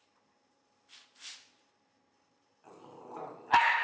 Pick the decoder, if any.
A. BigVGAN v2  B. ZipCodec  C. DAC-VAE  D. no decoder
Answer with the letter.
D